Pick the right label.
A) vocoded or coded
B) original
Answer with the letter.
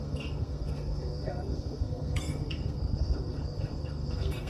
A